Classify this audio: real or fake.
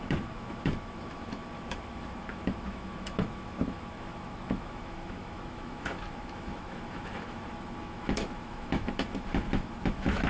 fake